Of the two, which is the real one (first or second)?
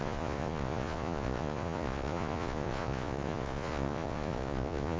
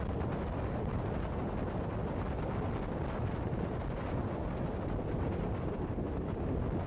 second